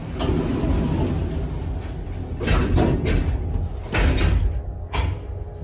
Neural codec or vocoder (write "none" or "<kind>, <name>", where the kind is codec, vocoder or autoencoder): none